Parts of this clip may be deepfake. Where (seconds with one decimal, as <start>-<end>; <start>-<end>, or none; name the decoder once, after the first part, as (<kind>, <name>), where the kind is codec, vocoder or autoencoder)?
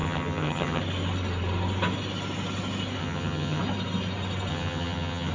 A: 0.0-0.8 (vocoder, HiFi-GAN); 3.0-3.6; 4.5-5.3